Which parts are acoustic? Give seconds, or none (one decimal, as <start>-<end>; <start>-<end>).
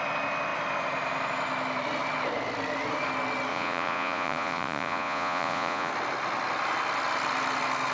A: 0.0-3.5; 5.9-7.9